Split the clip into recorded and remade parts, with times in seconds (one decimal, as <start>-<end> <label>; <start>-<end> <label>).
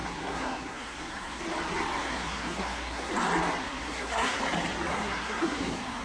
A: 0.0-1.4 remade; 1.4-2.0 recorded; 2.0-3.1 remade; 3.1-3.6 recorded; 3.6-4.4 remade; 4.4-4.9 recorded; 4.9-6.0 remade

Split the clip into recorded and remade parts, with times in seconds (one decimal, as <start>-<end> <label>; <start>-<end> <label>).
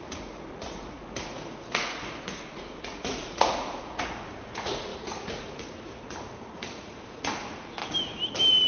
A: 0.0-7.8 remade; 7.8-8.7 recorded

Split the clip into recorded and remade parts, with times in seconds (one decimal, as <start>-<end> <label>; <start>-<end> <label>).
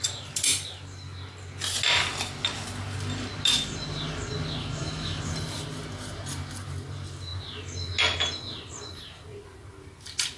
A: 0.0-4.6 recorded; 4.6-5.2 remade; 5.2-10.4 recorded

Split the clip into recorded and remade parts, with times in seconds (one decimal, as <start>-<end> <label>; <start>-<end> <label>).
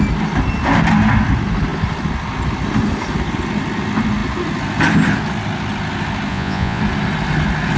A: 0.0-6.3 recorded; 6.3-6.8 remade; 6.8-7.8 recorded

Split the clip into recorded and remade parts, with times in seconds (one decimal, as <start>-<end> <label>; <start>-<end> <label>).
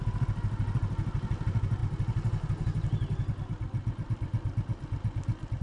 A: 0.0-5.6 recorded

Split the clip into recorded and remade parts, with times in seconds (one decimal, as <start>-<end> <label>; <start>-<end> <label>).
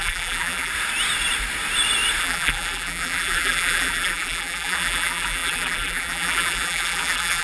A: 0.0-0.7 remade; 0.7-2.2 recorded; 2.2-7.4 remade